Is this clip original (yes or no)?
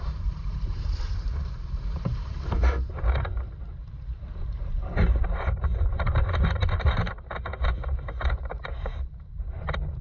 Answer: no